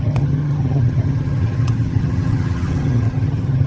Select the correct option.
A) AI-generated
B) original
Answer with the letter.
A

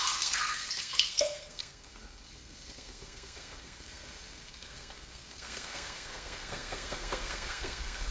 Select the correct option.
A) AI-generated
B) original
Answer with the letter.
A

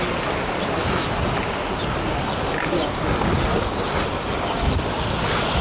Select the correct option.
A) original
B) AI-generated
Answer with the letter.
A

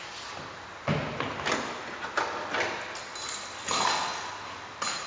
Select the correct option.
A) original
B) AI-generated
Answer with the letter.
A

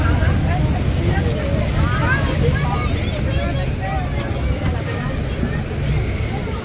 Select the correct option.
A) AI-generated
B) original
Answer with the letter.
B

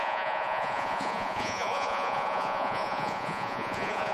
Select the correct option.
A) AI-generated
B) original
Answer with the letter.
A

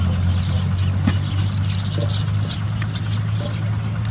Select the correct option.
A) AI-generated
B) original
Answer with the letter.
B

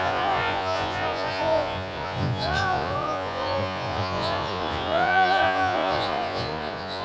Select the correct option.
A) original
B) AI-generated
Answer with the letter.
B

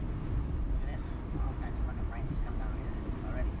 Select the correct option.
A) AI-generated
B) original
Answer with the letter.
A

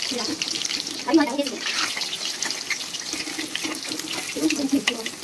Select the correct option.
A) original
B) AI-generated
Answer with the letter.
A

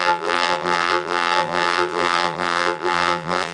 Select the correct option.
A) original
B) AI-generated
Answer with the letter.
B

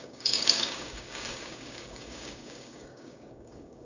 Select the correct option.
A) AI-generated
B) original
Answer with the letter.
A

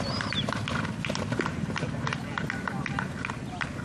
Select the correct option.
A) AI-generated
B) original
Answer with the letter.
B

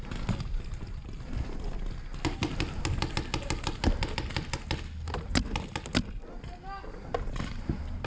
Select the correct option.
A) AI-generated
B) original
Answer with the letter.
B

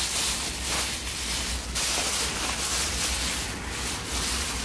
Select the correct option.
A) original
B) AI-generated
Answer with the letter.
A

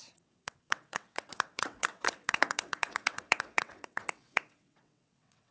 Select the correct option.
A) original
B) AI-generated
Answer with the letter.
B